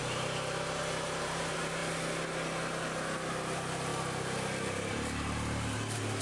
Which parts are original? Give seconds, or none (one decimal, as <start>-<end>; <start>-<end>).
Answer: 1.8-3.3; 3.9-4.9